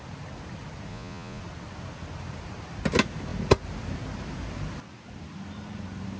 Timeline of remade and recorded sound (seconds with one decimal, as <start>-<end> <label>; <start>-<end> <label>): 0.0-0.9 recorded; 0.9-1.4 remade; 1.4-6.2 recorded